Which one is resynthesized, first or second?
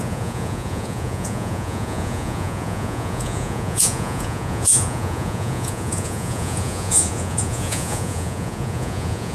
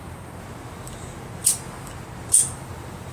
first